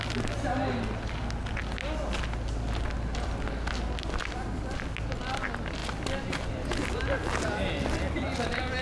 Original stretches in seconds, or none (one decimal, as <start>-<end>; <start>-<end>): 0.0-8.8